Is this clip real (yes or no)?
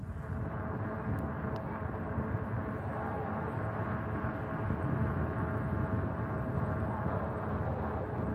yes